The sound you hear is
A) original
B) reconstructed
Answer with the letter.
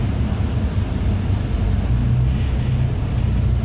A